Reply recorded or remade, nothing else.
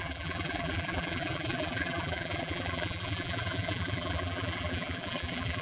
remade